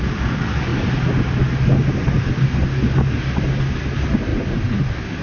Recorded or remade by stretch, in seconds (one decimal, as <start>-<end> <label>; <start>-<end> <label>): 0.0-5.2 recorded